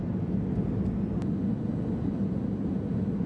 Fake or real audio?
real